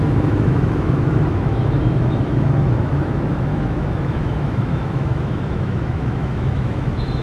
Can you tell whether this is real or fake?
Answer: fake